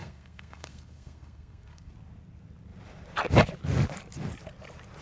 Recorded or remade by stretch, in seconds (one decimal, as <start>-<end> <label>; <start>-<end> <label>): 0.0-1.9 remade; 1.9-5.0 recorded